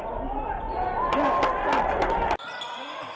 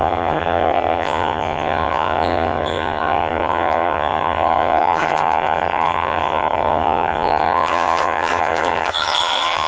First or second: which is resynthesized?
second